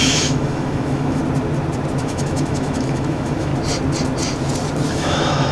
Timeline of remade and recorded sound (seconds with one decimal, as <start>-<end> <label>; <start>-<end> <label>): 0.0-1.2 remade; 1.2-2.0 recorded; 2.0-3.5 remade; 3.5-4.9 recorded; 4.9-5.5 remade